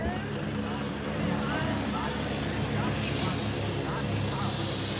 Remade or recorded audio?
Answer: recorded